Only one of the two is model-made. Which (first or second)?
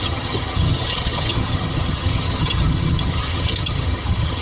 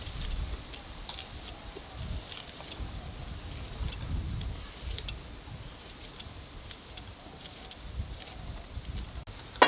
first